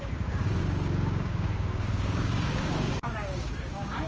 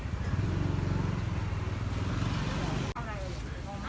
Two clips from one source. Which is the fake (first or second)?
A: first